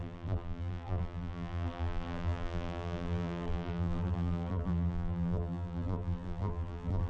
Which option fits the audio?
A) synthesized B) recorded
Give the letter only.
A